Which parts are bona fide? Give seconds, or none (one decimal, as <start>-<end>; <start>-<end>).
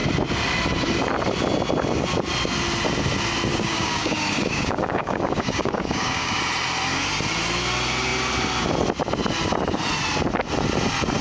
0.0-3.5; 6.4-11.2